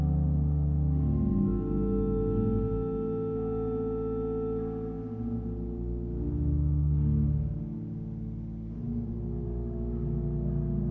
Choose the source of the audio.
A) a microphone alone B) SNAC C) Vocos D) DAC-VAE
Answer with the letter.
A